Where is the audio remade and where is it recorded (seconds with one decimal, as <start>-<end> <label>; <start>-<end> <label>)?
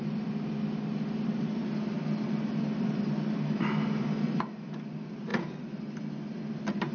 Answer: 0.0-6.9 recorded